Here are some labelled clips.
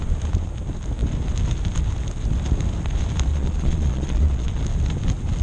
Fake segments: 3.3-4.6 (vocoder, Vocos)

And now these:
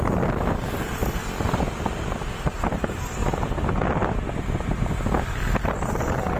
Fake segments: none

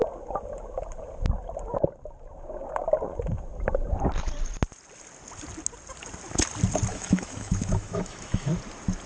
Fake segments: 6.9-8.5 (autoencoder, DAC-VAE)

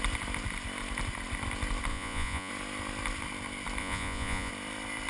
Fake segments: 1.9-2.5 (vocoder, Vocos); 3.8-4.5